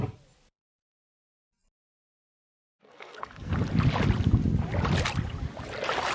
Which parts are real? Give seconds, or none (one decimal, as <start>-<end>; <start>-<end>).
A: 0.0-2.8; 3.5-6.1